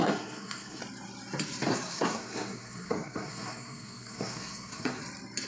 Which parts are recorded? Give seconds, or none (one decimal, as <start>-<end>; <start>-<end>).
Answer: 0.8-1.7; 5.0-5.5